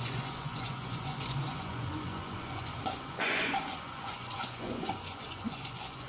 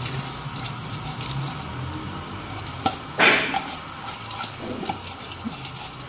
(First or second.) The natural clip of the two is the second